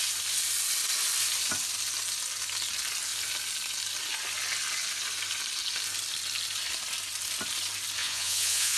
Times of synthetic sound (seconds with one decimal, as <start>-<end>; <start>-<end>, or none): 8.0-8.8